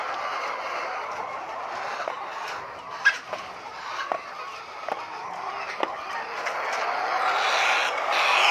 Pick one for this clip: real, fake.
real